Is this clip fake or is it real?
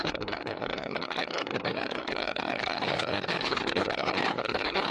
fake